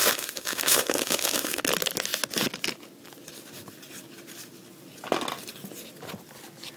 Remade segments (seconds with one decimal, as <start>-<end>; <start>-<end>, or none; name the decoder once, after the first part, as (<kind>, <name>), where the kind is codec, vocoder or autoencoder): 0.0-1.6 (autoencoder, DAC-VAE)